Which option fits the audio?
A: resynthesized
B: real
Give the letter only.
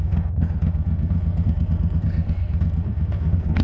A